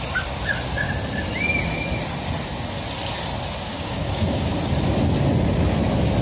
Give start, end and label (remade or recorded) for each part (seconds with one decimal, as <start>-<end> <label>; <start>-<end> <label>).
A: 0.0-3.7 recorded; 3.7-4.4 remade; 4.4-6.2 recorded